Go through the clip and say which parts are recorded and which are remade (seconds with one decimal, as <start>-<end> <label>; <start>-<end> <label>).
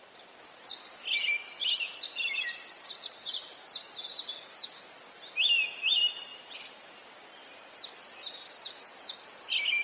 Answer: 0.0-9.8 recorded